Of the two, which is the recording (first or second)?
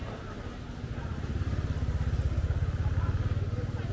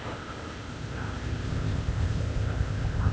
first